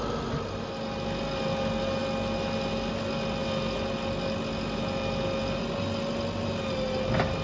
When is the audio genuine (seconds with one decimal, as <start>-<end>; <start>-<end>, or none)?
0.0-7.4